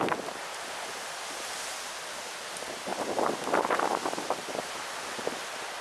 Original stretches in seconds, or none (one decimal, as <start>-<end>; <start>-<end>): 0.0-5.8